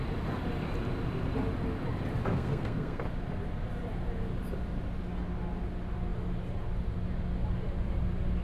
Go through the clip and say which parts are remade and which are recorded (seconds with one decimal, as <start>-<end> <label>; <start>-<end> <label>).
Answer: 0.0-2.3 recorded; 2.3-3.0 remade; 3.0-8.4 recorded